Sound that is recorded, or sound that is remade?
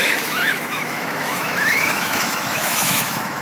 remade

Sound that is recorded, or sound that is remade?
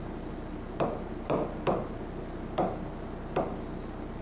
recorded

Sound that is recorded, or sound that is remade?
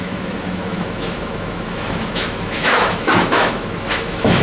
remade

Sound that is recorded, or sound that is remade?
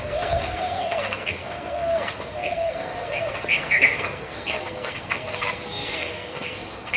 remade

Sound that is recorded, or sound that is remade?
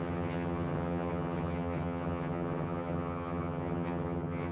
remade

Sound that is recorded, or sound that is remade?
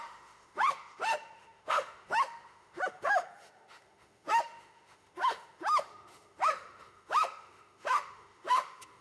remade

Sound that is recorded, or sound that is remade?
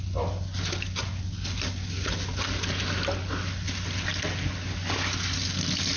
recorded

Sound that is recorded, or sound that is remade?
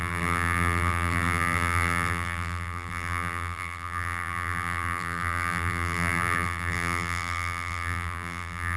remade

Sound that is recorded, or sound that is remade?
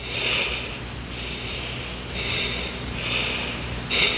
recorded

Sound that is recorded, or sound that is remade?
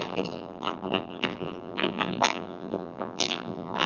remade